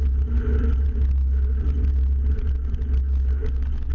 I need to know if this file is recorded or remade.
recorded